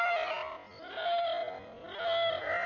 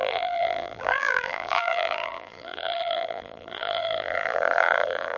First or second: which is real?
first